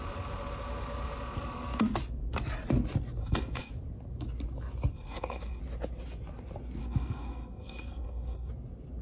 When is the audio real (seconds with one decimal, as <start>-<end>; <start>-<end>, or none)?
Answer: 0.0-3.2; 3.7-4.9; 5.6-6.8; 8.5-9.0